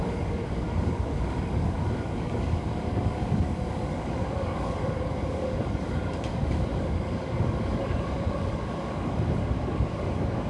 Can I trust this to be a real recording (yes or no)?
no